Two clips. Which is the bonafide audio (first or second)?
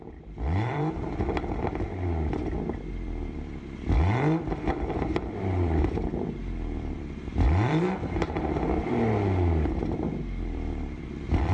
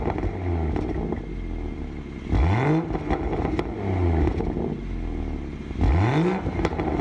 second